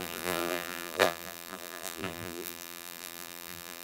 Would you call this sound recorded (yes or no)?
no